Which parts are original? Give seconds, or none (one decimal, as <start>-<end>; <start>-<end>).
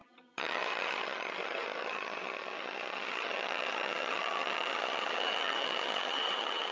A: none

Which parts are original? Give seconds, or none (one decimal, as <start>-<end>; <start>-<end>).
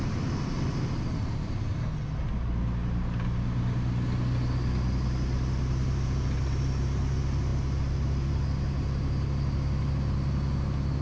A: 0.0-11.0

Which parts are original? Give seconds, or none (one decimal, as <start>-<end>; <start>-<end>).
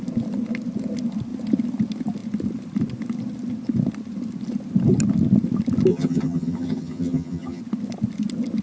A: 0.0-5.9; 7.6-8.6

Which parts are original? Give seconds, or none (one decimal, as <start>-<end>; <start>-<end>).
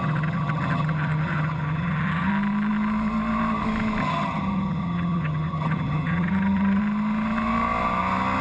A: 2.3-4.0; 6.8-8.4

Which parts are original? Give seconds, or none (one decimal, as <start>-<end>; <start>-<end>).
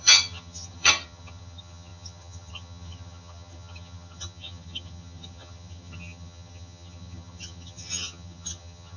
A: none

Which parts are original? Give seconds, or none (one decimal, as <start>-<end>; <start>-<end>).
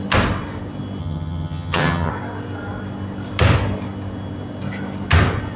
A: 0.0-1.0; 2.1-5.6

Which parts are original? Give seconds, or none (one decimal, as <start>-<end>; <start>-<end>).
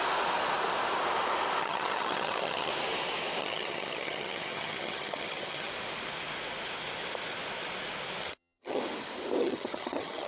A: 0.0-1.6; 2.7-3.4; 5.7-8.2; 8.8-9.4